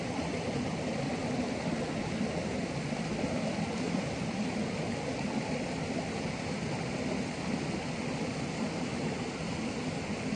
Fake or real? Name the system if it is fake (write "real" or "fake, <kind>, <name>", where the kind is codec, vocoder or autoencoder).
real